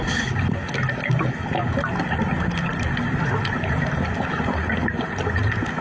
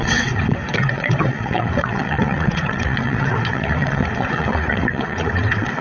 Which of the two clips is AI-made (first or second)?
second